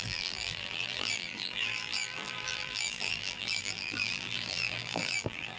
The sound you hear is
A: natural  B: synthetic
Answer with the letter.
B